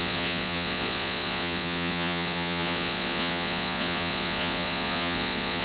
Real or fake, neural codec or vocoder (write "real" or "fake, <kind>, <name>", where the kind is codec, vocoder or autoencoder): fake, vocoder, Vocos